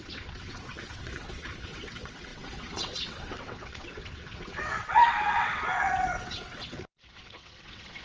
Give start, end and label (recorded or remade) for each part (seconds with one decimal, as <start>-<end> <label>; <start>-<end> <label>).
0.0-8.0 remade